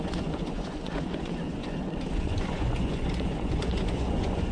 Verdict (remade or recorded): remade